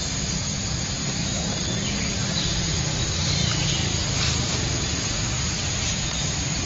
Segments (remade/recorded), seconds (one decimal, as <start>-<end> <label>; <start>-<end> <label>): 0.0-1.2 recorded; 1.2-1.8 remade; 1.8-6.7 recorded